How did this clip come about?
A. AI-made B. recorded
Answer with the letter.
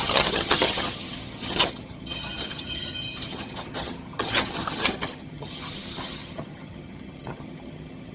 A